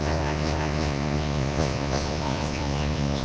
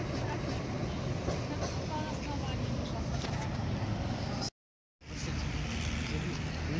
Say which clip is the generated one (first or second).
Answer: first